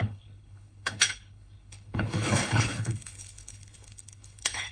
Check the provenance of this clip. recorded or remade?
remade